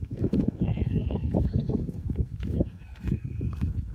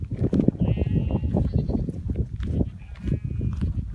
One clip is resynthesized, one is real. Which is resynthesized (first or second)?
first